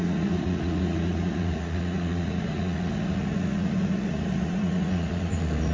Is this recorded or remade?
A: remade